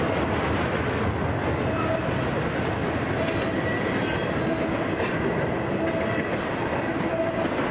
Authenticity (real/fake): real